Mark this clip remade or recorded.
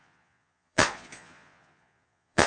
remade